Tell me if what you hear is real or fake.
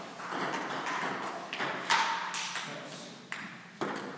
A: real